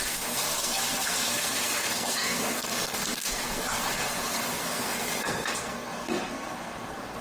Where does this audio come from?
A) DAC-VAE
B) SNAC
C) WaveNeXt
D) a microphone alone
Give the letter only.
B